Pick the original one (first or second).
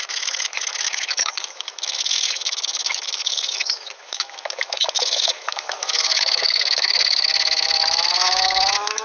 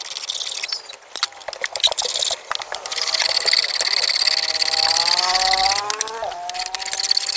second